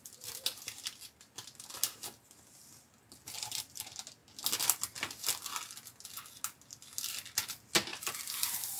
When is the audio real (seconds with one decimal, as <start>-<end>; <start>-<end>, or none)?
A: 0.0-7.9